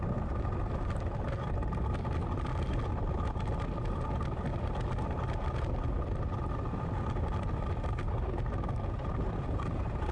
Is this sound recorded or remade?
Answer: recorded